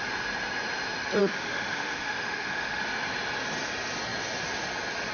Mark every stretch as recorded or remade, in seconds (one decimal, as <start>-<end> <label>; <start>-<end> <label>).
0.0-1.2 recorded; 1.2-2.8 remade; 2.8-5.1 recorded